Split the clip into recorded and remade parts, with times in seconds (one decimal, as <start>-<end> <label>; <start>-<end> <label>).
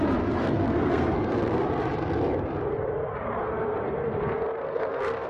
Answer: 0.0-0.4 recorded; 0.4-1.7 remade; 1.7-3.4 recorded; 3.4-5.3 remade